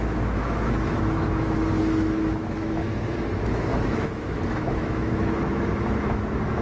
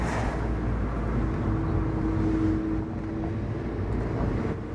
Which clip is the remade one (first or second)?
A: first